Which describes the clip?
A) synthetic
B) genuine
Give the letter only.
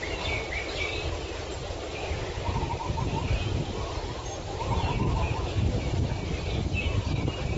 B